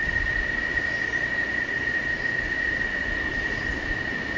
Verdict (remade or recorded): remade